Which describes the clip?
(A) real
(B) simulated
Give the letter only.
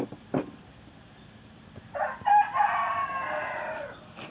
A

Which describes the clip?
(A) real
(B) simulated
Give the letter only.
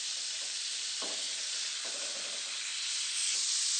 A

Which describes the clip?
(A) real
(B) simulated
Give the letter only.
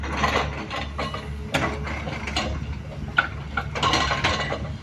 A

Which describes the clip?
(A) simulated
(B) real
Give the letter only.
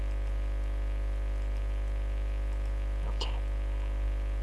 B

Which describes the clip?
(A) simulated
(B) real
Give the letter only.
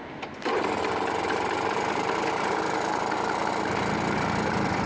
B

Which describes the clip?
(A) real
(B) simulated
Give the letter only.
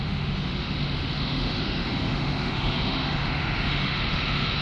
B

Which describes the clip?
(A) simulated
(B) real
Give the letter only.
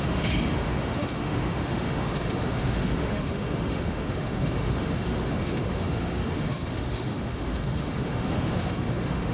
A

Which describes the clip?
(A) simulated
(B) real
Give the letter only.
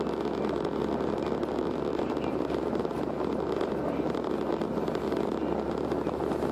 B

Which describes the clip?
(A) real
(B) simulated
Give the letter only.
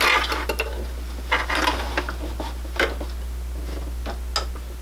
A